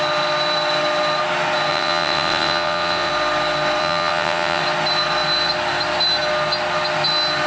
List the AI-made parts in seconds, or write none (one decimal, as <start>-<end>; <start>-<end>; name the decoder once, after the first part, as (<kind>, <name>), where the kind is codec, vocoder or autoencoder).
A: 1.7-3.1 (vocoder, WaveNeXt); 3.8-4.6